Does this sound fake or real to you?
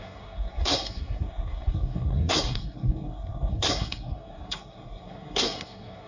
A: fake